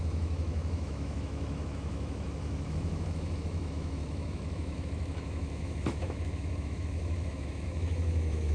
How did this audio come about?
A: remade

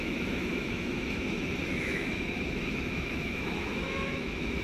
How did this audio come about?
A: remade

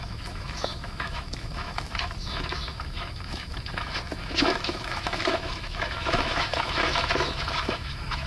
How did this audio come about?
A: remade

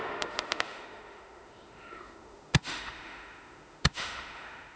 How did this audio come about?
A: remade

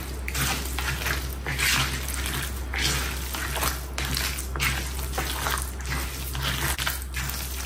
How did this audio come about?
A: recorded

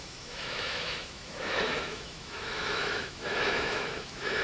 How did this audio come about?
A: remade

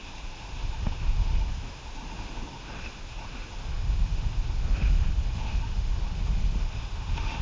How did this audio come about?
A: remade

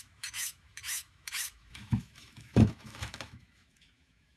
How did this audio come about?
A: remade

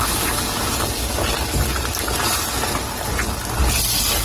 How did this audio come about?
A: recorded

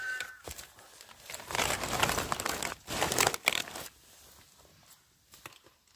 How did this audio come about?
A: recorded